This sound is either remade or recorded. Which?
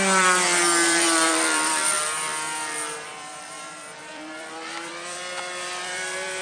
remade